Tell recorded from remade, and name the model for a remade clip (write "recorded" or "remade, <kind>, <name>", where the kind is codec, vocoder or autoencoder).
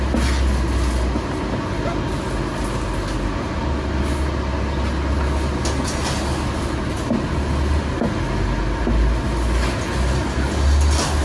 recorded